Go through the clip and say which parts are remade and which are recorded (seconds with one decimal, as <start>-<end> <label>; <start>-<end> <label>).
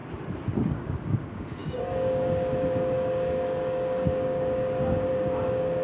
0.0-0.7 recorded; 0.7-5.8 remade